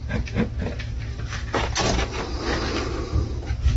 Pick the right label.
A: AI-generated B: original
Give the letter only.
B